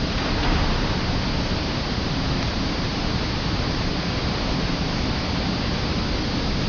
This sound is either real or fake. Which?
real